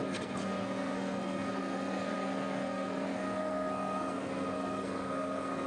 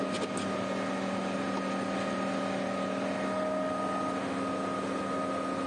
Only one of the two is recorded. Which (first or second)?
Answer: second